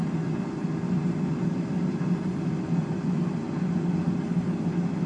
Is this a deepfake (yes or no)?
no